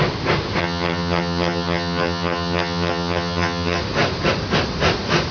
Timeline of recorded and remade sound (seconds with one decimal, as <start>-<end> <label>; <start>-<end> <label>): 0.0-0.6 recorded; 0.6-3.8 remade; 3.8-5.3 recorded